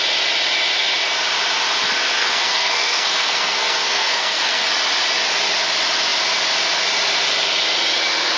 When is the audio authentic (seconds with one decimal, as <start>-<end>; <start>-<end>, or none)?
0.0-2.2; 4.7-8.4